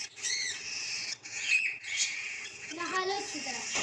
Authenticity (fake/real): fake